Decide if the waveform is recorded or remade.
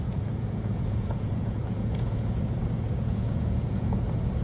remade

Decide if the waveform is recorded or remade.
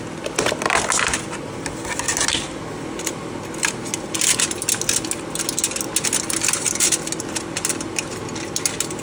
recorded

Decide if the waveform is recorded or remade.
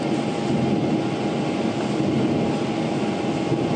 recorded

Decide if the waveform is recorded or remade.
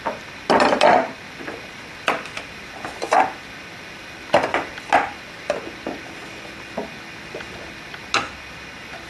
recorded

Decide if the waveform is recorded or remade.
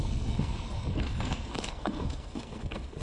remade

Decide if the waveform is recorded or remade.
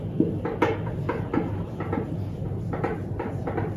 recorded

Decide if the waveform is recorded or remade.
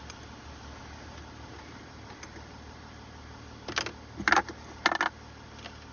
recorded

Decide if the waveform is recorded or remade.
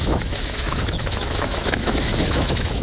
remade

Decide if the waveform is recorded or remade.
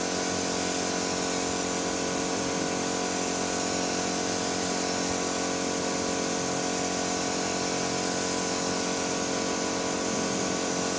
recorded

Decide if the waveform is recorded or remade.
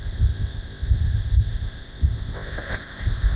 remade